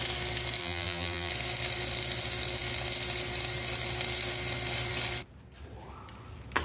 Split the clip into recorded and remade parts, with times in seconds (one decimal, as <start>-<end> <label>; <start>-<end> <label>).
0.0-0.6 recorded; 0.6-1.3 remade; 1.3-6.6 recorded